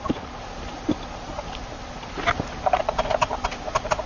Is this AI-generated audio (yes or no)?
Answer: no